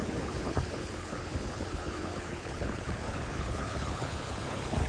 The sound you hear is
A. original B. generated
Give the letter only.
B